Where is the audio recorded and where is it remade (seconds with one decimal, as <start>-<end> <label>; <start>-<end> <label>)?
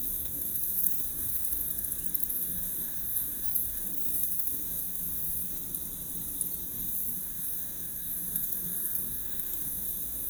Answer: 0.0-1.7 remade; 1.7-2.3 recorded; 2.3-5.6 remade; 5.6-6.6 recorded; 6.6-10.3 remade